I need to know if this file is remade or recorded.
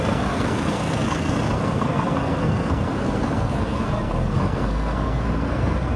remade